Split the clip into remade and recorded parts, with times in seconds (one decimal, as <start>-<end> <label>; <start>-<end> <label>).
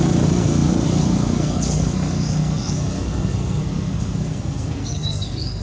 0.0-5.6 remade